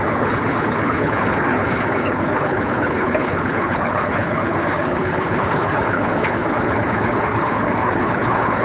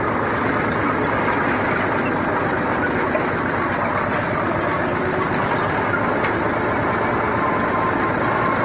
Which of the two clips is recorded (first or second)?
second